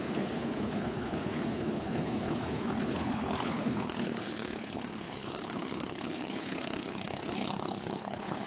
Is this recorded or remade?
remade